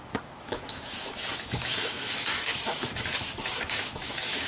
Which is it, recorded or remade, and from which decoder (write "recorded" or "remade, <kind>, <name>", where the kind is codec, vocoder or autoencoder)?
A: remade, autoencoder, DAC-VAE